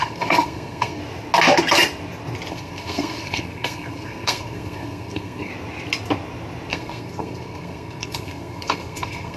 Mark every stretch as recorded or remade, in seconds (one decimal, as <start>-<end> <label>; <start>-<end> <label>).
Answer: 0.0-1.0 remade; 1.0-2.5 recorded; 2.5-5.5 remade; 5.5-6.7 recorded; 6.7-9.4 remade